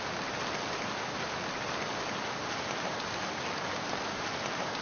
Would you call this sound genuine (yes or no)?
yes